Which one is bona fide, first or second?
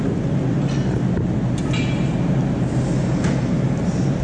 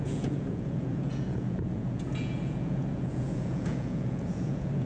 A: first